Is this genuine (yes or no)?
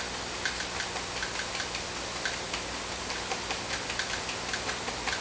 yes